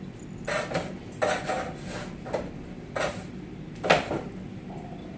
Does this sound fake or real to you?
real